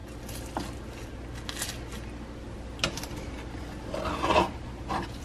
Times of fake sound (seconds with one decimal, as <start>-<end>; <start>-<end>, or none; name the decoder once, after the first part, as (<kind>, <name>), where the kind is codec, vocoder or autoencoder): none